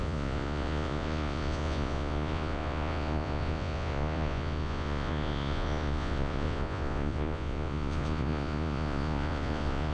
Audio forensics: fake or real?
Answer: fake